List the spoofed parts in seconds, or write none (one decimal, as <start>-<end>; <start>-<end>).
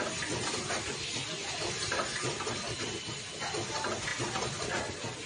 none